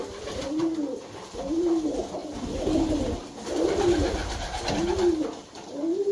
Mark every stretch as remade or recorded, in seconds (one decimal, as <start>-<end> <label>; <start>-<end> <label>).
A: 0.0-6.1 recorded